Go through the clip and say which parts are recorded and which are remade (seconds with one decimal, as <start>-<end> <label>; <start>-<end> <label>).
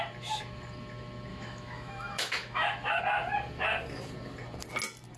0.0-1.3 recorded; 1.3-3.0 remade; 3.0-5.2 recorded